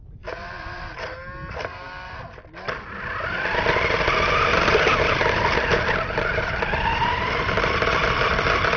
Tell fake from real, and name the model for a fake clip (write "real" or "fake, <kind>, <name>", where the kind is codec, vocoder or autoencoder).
real